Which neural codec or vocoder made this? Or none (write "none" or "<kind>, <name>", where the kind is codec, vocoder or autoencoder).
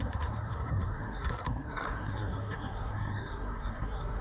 codec, SNAC